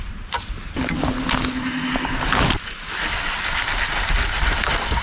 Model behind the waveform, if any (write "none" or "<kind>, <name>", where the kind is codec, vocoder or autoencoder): none